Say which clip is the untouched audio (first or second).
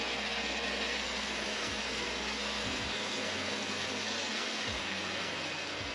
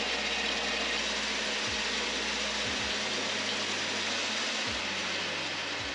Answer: second